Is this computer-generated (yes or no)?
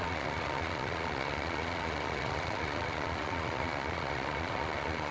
yes